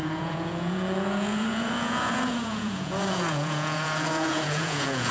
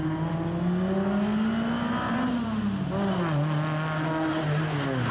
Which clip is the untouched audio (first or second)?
second